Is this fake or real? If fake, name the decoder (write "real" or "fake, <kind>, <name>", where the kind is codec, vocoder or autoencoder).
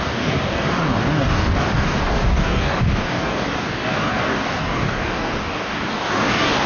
fake, codec, DAC